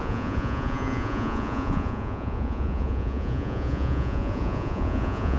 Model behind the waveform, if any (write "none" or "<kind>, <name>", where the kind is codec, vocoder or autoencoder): vocoder, Vocos